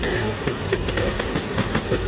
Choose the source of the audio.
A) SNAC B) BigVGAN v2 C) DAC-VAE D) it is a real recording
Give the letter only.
A